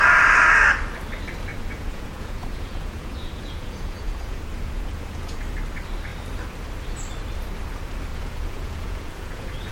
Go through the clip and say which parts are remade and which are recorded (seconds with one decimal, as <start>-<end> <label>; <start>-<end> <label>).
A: 0.0-1.5 recorded; 1.5-5.4 remade; 5.4-8.1 recorded; 8.1-9.7 remade